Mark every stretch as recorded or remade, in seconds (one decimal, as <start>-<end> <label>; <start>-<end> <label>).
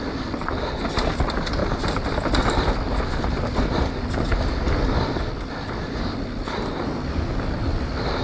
0.0-8.2 recorded